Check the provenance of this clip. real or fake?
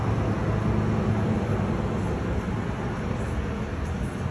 real